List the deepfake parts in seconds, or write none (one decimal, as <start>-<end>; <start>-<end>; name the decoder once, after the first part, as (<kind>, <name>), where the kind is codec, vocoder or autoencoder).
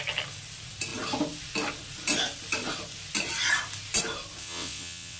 4.4-5.2 (vocoder, WaveNeXt)